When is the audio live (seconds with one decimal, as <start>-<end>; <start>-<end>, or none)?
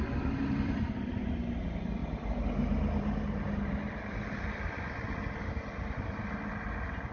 0.0-7.1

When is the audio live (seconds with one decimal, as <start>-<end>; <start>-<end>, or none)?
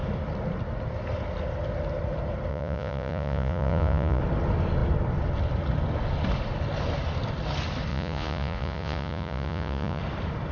0.0-2.5; 4.2-7.9; 10.0-10.5